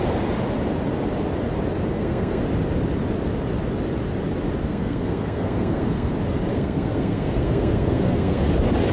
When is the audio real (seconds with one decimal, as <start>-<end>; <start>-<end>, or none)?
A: 0.0-1.9; 2.4-4.6; 6.1-6.5; 8.5-8.9